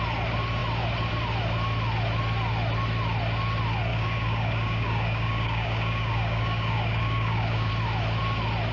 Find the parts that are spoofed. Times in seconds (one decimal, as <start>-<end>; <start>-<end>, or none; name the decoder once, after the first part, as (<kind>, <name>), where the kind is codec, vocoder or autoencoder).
3.9-7.7 (codec, DAC)